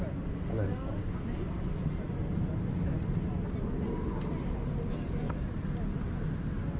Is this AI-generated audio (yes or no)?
no